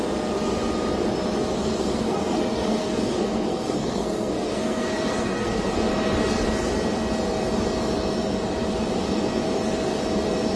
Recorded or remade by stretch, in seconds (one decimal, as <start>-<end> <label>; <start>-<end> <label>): 0.0-1.6 recorded; 1.6-5.6 remade; 5.6-10.6 recorded